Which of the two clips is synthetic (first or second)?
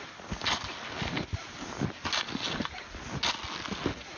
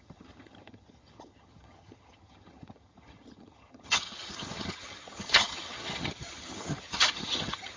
second